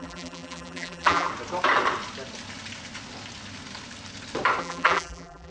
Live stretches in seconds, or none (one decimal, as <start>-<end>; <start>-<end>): 1.3-4.6

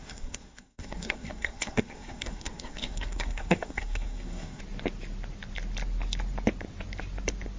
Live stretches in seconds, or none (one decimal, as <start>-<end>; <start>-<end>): 4.6-7.6

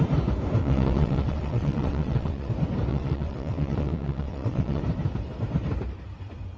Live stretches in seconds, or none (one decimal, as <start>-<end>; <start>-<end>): 0.0-0.6; 2.5-2.9; 4.8-6.6